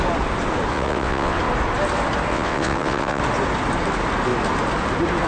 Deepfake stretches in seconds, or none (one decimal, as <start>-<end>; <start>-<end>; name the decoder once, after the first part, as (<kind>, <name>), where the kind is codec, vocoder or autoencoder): 0.7-1.4 (vocoder, WaveNeXt); 2.3-3.2